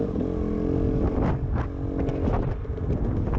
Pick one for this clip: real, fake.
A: real